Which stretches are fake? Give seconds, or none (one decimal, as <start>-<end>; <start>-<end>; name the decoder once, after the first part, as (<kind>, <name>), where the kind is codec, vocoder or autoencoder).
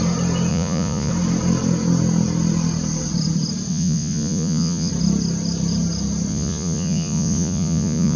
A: 0.5-1.1 (vocoder, Vocos); 3.7-4.9; 6.3-8.2